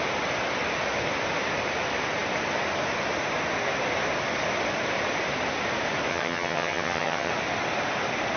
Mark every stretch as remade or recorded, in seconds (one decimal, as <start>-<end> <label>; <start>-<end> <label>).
0.0-6.1 recorded; 6.1-7.3 remade; 7.3-8.4 recorded